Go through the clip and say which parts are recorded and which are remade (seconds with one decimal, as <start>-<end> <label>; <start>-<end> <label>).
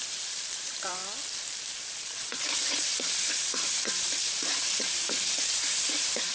0.0-1.0 remade; 1.0-4.8 recorded; 4.8-6.3 remade